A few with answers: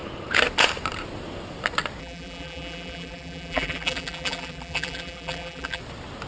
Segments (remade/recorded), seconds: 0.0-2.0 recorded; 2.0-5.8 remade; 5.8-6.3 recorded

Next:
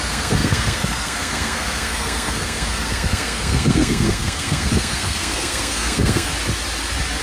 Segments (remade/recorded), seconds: 0.0-6.3 remade; 6.3-7.2 recorded

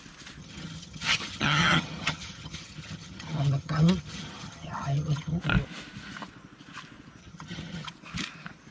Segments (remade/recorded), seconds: 0.0-0.4 recorded; 0.4-5.4 remade; 5.4-7.2 recorded; 7.2-7.9 remade; 7.9-8.7 recorded

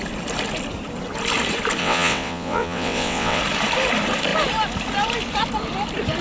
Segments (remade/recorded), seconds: 0.0-1.8 recorded; 1.8-3.4 remade; 3.4-6.2 recorded

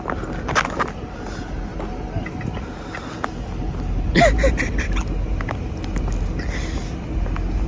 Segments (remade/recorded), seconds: 0.0-7.7 recorded

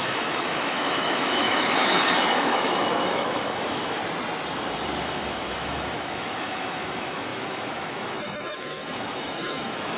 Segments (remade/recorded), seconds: 0.0-4.0 remade; 4.0-5.0 recorded; 5.0-10.0 remade